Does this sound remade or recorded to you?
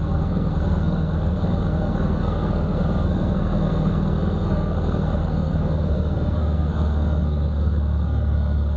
remade